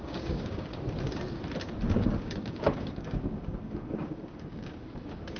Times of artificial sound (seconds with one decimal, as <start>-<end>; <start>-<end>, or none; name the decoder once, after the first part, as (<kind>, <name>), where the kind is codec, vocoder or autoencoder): 0.0-0.7 (codec, DAC); 1.9-5.4